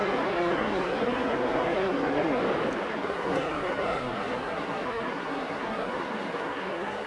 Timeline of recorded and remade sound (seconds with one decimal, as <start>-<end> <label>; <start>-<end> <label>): 0.0-2.4 remade; 2.4-2.9 recorded; 2.9-7.1 remade